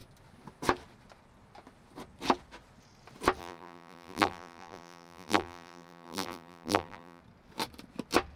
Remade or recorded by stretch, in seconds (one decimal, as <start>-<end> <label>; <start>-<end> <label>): 0.0-3.4 recorded; 3.4-7.2 remade; 7.2-8.4 recorded